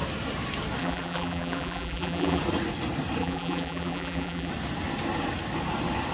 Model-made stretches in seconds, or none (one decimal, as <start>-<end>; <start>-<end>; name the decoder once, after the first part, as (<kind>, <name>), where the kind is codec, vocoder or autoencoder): 0.8-2.4 (vocoder, BigVGAN v2); 3.2-4.5